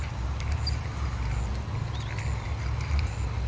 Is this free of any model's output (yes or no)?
yes